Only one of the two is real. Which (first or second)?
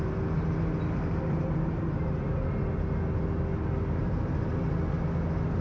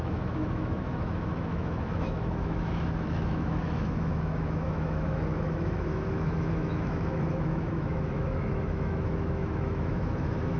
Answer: first